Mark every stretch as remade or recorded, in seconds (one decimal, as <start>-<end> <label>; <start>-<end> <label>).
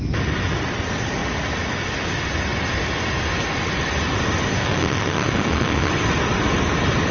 0.0-4.5 recorded; 4.5-5.9 remade; 5.9-7.1 recorded